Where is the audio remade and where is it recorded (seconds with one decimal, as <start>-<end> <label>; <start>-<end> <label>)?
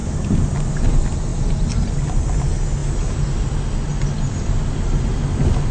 0.0-5.7 recorded